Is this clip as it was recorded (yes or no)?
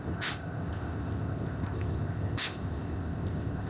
no